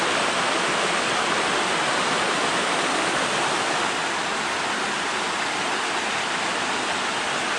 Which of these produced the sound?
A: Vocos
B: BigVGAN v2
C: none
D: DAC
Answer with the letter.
C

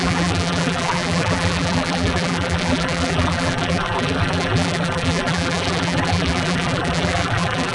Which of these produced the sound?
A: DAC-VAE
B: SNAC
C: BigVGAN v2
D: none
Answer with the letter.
C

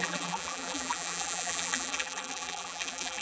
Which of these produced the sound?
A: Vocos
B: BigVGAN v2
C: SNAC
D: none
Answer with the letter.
B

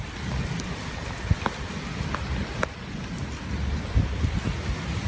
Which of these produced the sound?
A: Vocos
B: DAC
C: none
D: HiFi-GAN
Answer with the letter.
C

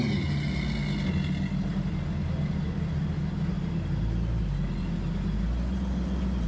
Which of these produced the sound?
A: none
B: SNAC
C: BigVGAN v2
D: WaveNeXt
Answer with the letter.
A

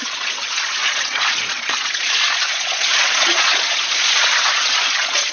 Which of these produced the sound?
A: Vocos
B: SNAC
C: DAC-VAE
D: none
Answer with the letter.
A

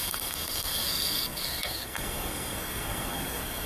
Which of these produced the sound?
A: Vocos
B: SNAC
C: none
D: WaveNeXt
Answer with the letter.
B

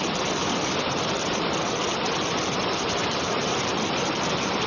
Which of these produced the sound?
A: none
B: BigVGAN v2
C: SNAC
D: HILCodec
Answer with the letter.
B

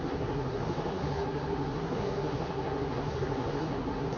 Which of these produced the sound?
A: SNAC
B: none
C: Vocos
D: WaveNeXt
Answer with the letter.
A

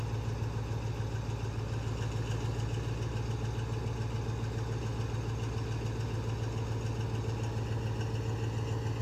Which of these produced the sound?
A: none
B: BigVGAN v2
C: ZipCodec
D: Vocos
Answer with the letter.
A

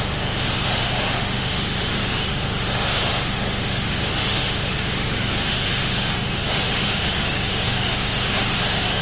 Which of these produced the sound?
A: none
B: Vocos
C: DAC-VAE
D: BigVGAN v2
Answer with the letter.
C